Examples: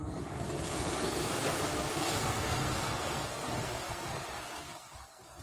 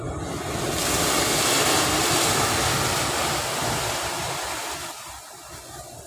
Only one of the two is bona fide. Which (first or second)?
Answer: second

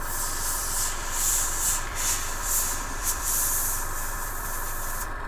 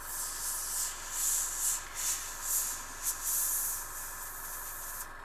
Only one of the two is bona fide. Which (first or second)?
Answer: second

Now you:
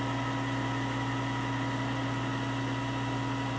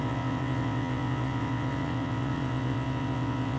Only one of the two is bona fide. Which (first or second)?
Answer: first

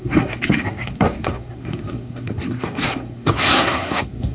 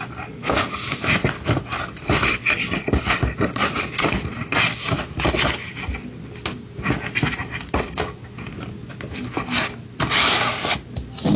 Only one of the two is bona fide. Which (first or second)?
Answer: second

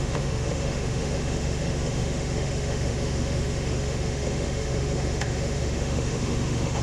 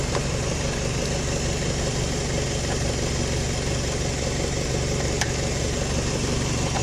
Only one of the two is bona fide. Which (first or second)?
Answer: second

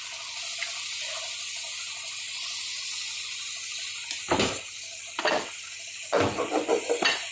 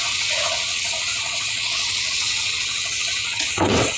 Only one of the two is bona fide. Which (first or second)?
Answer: first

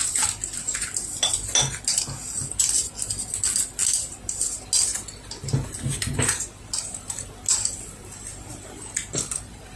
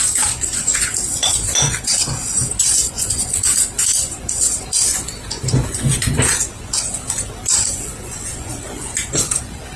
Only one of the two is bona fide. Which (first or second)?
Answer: first